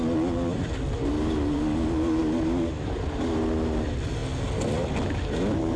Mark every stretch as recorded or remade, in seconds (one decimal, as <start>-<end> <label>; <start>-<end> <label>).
0.0-5.8 recorded